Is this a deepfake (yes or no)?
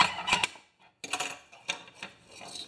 no